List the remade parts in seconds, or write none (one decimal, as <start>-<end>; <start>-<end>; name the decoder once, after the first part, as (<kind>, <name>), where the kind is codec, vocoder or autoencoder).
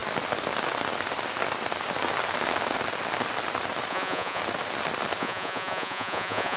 3.9-4.4 (vocoder, Vocos); 5.2-6.6